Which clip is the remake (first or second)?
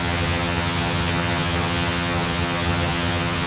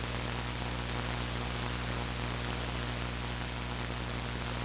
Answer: first